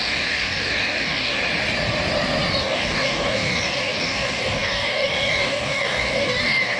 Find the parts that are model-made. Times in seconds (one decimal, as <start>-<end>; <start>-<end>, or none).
0.0-1.4; 2.6-6.8